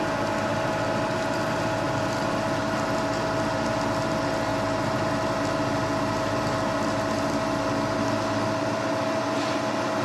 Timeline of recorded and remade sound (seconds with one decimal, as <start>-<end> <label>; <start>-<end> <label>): 0.0-10.0 recorded